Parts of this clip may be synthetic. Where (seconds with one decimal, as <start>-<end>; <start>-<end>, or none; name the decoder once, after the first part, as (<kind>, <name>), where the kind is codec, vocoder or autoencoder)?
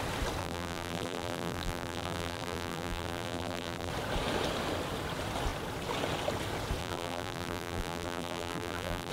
0.4-3.9 (vocoder, BigVGAN v2); 6.8-9.1